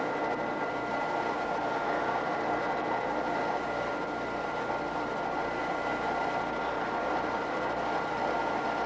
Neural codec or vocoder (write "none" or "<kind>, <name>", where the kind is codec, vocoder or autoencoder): none